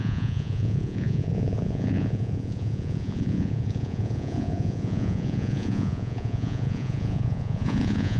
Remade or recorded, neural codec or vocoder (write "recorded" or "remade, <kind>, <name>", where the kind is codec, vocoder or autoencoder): remade, vocoder, Vocos